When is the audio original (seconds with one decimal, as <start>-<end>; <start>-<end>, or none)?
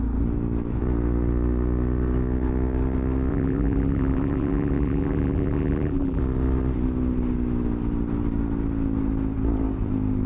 0.0-3.3; 6.2-10.3